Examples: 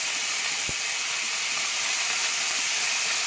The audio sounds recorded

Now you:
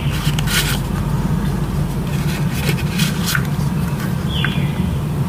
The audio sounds recorded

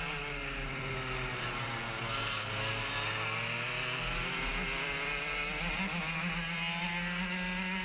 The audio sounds recorded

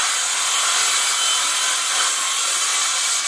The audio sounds recorded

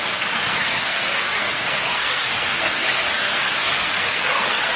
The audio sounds remade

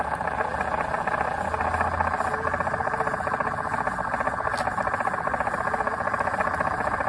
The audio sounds recorded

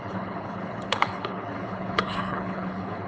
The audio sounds remade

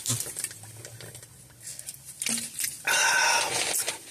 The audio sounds recorded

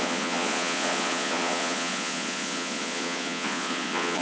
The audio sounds remade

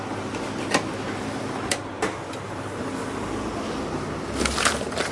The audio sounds recorded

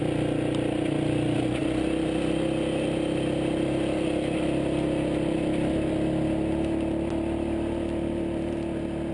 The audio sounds recorded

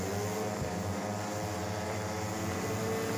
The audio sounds recorded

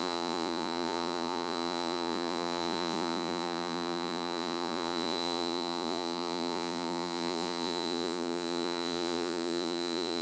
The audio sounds remade